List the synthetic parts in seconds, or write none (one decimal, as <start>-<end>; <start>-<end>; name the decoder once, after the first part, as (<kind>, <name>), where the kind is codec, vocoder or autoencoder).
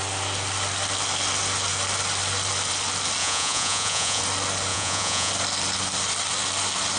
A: 3.2-4.2 (vocoder, Vocos); 4.7-5.3